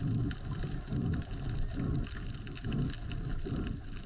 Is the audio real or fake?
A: real